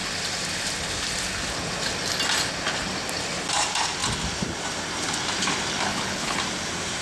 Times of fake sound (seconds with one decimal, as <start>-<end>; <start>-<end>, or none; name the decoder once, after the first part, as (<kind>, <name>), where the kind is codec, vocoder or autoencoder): 5.9-6.4 (codec, HILCodec)